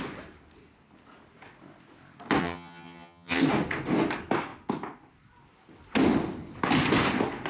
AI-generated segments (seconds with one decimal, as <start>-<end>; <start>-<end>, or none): 2.4-3.4